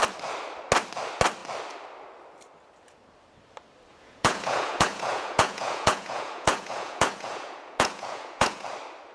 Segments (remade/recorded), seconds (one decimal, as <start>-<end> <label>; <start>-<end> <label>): 0.0-3.9 recorded; 3.9-8.7 remade; 8.7-9.1 recorded